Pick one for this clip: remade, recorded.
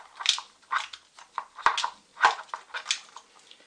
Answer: recorded